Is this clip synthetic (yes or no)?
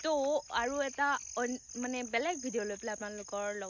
no